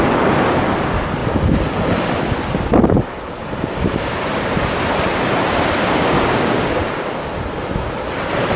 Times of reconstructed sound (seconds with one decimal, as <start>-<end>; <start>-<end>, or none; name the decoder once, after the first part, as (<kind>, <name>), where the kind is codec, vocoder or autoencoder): 5.8-7.1 (codec, DAC)